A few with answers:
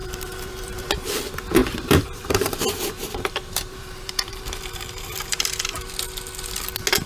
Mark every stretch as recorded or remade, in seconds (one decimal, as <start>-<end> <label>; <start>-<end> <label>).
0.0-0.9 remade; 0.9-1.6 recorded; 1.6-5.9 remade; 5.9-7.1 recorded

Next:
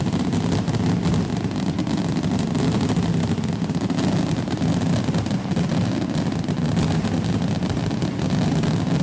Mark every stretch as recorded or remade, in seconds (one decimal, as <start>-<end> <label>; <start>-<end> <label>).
0.0-9.0 recorded

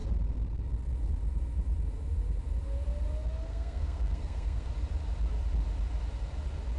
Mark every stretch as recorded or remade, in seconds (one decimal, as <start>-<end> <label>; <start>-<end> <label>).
0.0-3.5 recorded; 3.5-4.7 remade; 4.7-6.8 recorded